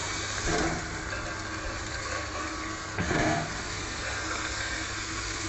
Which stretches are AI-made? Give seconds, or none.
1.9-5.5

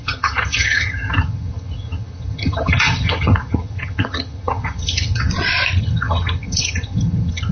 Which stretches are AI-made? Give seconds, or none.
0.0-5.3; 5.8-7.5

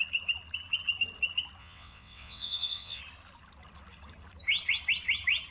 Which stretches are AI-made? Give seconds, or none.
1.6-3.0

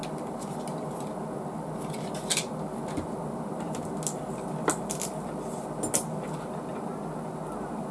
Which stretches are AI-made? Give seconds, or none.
none

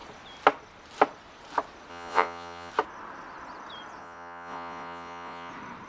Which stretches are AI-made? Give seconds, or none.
1.9-2.7; 4.0-5.5

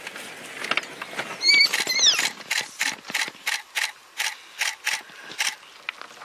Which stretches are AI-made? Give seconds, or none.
none